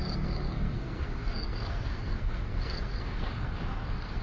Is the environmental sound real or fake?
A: fake